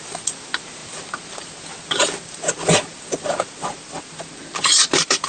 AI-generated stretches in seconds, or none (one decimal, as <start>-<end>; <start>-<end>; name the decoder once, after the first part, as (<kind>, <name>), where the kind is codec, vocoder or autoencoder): none